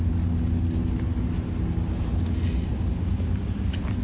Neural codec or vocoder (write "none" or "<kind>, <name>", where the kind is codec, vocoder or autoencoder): none